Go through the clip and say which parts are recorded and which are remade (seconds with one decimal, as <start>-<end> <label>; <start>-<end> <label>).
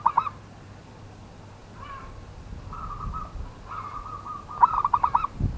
0.0-5.6 recorded